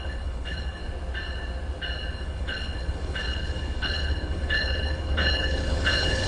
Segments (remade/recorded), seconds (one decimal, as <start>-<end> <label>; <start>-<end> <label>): 0.0-0.8 remade; 0.8-2.1 recorded; 2.1-6.3 remade